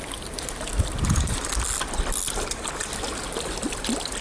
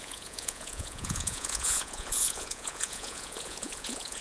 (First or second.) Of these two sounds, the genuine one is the first